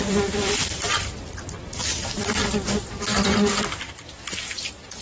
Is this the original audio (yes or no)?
no